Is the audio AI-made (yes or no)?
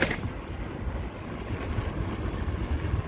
no